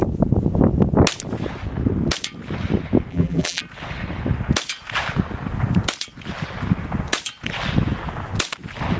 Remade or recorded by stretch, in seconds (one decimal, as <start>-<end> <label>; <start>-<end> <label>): 0.0-3.1 recorded; 3.1-3.6 remade; 3.6-9.0 recorded